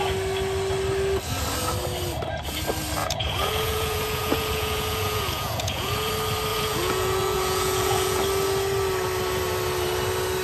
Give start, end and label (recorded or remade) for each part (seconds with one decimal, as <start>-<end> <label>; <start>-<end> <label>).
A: 0.0-3.0 recorded; 3.0-6.1 remade; 6.1-6.5 recorded; 6.5-8.2 remade; 8.2-10.4 recorded